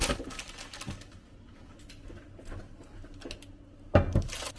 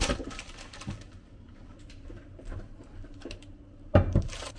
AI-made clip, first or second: second